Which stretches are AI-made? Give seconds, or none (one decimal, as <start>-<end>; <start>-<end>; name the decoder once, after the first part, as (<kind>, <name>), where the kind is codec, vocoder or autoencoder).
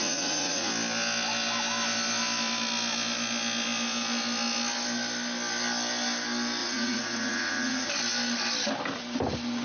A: 0.0-0.7 (vocoder, Vocos); 6.6-7.9